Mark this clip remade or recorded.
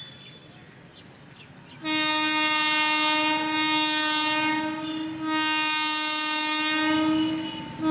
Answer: recorded